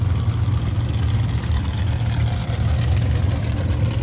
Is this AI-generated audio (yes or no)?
no